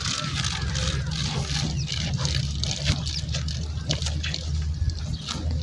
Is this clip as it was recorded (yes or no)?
yes